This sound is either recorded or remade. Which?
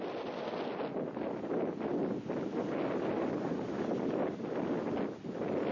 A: recorded